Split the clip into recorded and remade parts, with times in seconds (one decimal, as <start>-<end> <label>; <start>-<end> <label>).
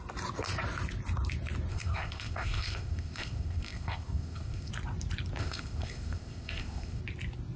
0.0-1.7 recorded; 1.7-4.7 remade; 4.7-5.4 recorded; 5.4-7.0 remade; 7.0-7.6 recorded